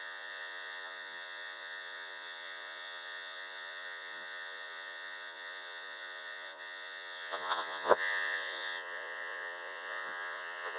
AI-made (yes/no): yes